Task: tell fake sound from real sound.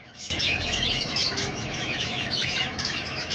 fake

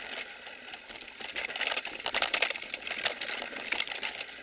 real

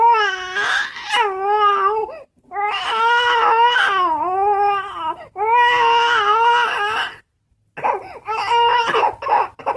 real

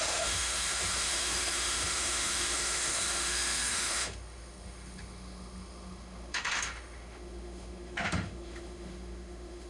fake